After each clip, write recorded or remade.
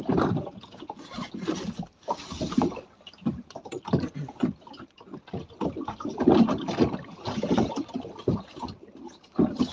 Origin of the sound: recorded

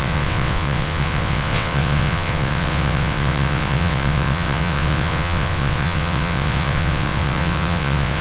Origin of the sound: remade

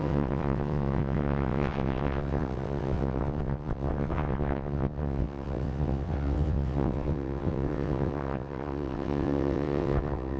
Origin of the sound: remade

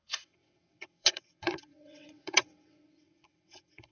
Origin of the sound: remade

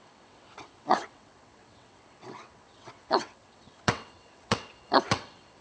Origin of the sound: remade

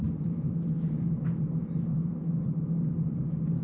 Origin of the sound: recorded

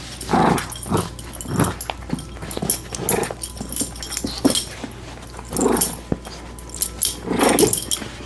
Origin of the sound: recorded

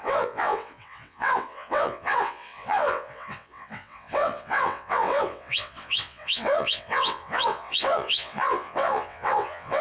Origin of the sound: remade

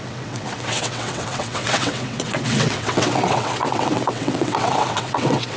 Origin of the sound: remade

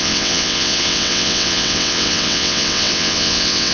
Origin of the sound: remade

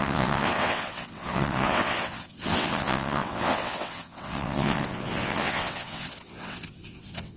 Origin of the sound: remade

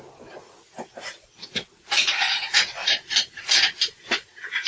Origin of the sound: recorded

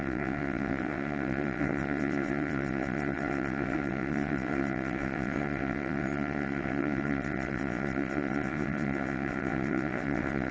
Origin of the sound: remade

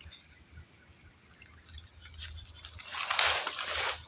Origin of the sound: recorded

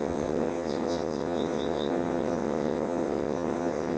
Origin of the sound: remade